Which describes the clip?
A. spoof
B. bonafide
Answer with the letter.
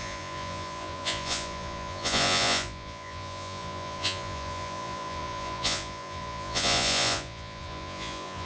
A